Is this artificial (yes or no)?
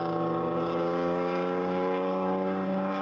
yes